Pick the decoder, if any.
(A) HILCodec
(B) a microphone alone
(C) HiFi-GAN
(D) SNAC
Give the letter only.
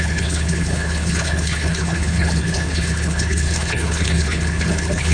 A